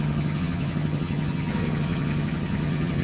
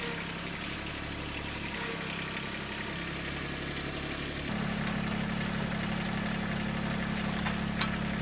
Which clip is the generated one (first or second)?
first